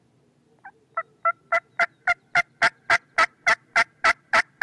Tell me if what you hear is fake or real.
real